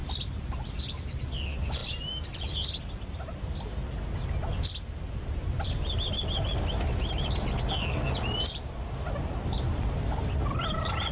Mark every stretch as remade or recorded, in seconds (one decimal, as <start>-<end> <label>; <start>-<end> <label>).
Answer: 0.0-11.1 recorded